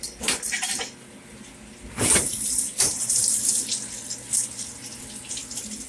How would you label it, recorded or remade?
recorded